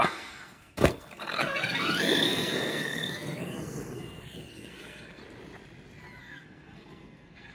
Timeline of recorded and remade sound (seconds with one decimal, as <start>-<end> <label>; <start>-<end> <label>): 0.0-5.2 remade; 5.2-6.2 recorded; 6.2-7.5 remade